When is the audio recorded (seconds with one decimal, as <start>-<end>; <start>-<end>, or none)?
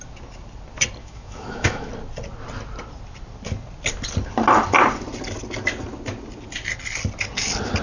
0.0-1.0; 1.9-7.8